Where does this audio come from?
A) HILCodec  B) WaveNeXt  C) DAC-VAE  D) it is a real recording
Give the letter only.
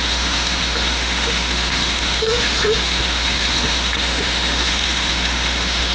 C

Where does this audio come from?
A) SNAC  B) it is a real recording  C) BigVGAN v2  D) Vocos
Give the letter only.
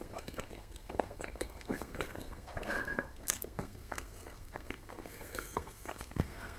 A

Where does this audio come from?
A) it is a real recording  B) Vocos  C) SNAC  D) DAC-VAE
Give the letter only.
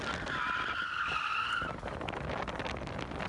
A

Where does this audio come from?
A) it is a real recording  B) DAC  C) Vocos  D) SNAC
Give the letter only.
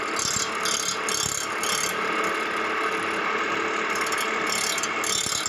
A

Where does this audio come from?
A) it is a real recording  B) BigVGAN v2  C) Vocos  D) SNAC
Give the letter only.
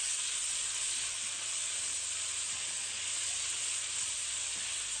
A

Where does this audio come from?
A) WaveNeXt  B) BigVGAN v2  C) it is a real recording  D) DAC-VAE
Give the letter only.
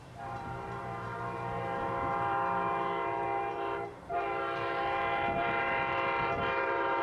B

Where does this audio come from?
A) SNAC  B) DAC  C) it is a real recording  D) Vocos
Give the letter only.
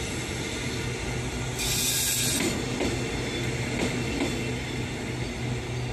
C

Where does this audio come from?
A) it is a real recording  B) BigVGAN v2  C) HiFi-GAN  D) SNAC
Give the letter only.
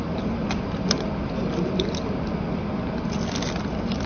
A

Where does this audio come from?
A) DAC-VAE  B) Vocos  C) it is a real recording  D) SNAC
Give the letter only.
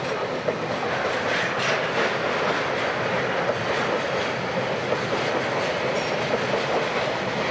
C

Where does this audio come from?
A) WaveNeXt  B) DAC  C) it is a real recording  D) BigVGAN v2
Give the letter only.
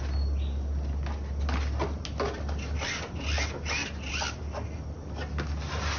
C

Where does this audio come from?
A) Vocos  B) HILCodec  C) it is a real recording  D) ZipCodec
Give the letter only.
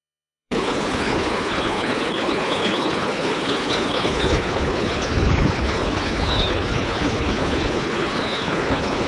B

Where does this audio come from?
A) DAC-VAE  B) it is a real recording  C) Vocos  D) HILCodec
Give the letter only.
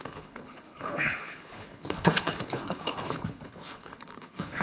D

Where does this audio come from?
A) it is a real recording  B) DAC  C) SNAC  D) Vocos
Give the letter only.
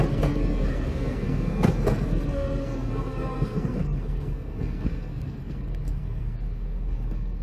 C